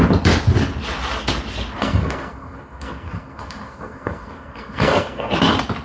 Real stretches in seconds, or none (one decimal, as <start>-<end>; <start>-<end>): 0.0-1.8; 5.3-5.8